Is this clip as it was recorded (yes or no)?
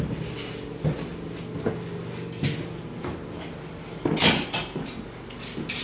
yes